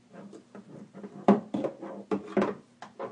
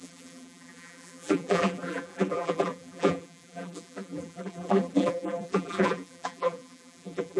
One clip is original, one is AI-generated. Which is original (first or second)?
first